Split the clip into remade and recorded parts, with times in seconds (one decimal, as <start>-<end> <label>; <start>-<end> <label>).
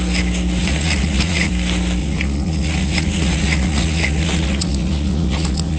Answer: 0.0-0.6 recorded; 0.6-1.5 remade; 1.5-2.0 recorded; 2.0-5.8 remade